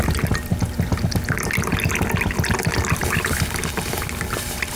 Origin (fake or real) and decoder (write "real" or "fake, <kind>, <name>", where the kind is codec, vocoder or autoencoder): real